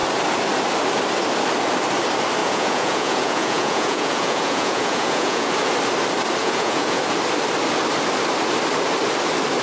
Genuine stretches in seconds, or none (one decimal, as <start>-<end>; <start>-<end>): 0.0-2.4; 5.5-6.4; 7.0-9.6